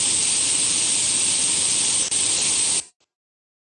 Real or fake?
real